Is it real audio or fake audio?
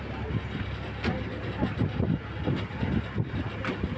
real